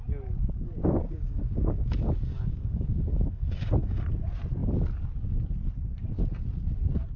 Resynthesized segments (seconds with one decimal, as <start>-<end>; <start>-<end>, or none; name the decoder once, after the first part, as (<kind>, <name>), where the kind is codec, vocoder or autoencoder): 1.0-4.1 (codec, DAC)